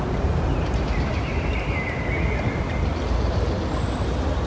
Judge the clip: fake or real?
real